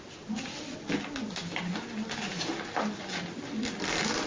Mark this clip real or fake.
real